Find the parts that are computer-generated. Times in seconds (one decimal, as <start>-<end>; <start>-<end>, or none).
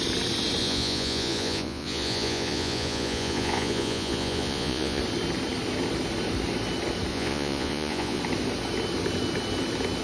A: 0.6-5.0; 7.1-8.2